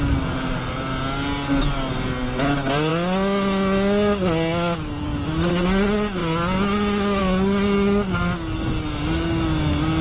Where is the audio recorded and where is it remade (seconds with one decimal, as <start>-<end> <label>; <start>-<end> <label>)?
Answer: 0.0-10.0 recorded